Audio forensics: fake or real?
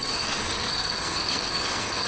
fake